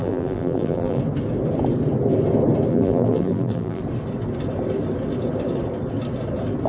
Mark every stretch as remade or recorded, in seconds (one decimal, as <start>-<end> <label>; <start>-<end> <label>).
0.0-1.0 remade; 1.0-2.7 recorded; 2.7-3.8 remade; 3.8-6.7 recorded